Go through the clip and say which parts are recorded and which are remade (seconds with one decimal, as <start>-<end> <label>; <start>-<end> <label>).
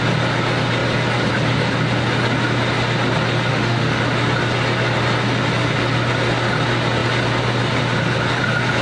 0.0-3.5 recorded; 3.5-4.0 remade; 4.0-8.8 recorded